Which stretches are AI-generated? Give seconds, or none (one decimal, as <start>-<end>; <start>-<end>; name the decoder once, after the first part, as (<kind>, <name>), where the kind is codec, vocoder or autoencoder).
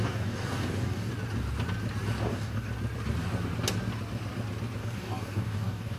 0.0-1.1 (codec, DAC); 2.3-2.7; 4.8-6.0